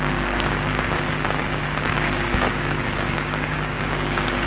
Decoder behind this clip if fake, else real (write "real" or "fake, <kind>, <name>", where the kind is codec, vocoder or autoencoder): fake, codec, DAC